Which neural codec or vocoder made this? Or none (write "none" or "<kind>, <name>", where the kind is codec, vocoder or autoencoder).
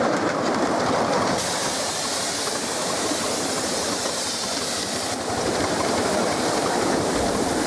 vocoder, BigVGAN v2